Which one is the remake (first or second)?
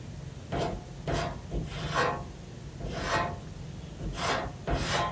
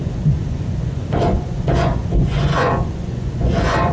second